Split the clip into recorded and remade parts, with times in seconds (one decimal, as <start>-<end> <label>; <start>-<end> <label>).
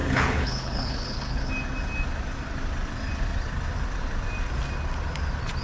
0.0-1.5 remade; 1.5-5.6 recorded